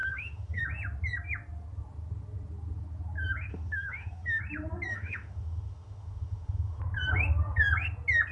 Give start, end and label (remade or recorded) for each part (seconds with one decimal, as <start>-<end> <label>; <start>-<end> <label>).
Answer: 0.0-0.6 remade; 0.6-3.5 recorded; 3.5-4.4 remade; 4.4-4.9 recorded; 4.9-6.8 remade; 6.8-8.3 recorded